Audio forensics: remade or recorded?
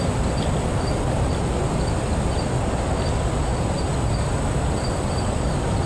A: recorded